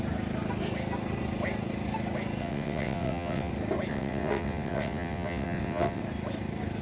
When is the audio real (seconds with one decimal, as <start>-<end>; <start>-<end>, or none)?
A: 0.0-2.4; 3.5-3.9; 6.0-6.8